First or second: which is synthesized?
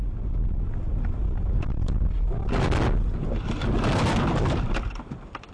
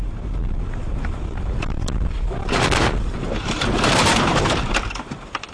second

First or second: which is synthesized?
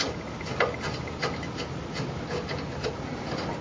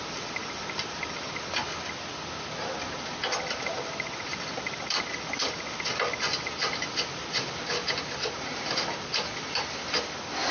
second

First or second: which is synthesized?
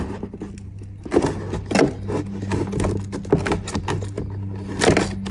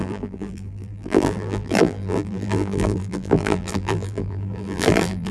second